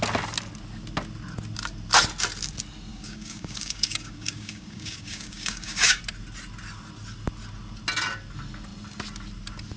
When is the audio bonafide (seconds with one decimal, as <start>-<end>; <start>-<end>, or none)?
0.0-2.9; 6.0-9.8